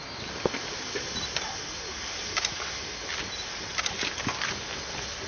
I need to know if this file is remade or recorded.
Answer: recorded